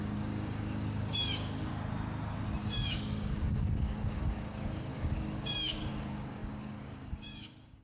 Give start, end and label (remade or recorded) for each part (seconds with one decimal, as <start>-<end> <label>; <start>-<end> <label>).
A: 0.0-1.7 remade; 1.7-2.6 recorded; 2.6-7.8 remade